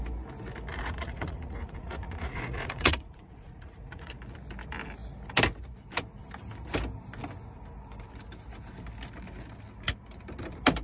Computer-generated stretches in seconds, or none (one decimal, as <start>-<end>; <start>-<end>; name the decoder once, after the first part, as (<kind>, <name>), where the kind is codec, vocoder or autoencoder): 0.7-4.1 (vocoder, Vocos)